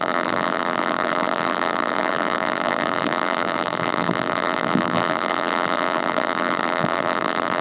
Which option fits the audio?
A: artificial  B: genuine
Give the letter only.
A